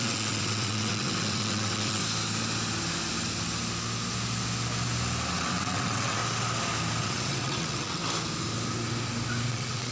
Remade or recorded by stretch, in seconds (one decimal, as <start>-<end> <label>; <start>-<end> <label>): 0.0-2.0 remade; 2.0-5.3 recorded; 5.3-6.2 remade; 6.2-7.0 recorded; 7.0-8.0 remade; 8.0-9.5 recorded; 9.5-9.9 remade